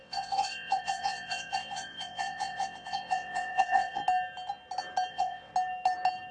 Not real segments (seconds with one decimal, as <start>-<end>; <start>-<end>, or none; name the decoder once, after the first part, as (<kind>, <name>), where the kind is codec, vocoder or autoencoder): 0.0-4.0 (vocoder, WaveNeXt); 5.1-5.5